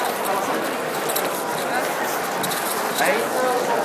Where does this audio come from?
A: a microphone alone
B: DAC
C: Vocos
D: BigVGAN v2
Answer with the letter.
A